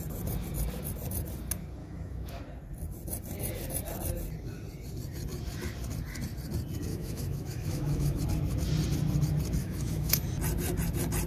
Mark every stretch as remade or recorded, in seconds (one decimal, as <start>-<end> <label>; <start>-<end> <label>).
0.0-1.8 recorded; 1.8-2.4 remade; 2.4-6.9 recorded; 6.9-8.2 remade; 8.2-9.6 recorded; 9.6-10.2 remade; 10.2-11.3 recorded